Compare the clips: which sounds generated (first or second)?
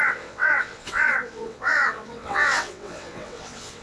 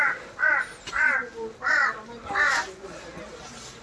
first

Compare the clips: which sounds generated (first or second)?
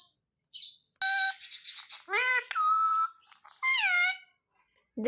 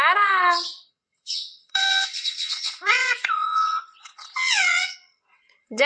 second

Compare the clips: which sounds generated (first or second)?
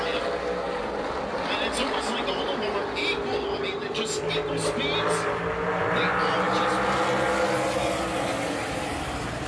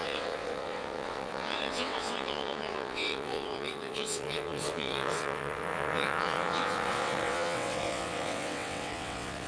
second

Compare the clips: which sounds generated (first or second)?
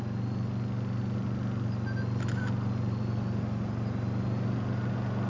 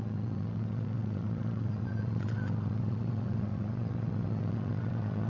second